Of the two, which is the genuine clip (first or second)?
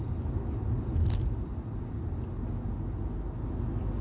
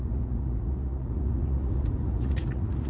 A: first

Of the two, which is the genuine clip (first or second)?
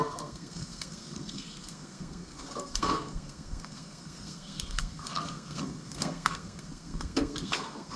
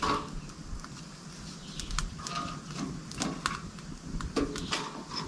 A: second